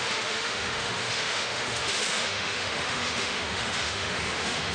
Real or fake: fake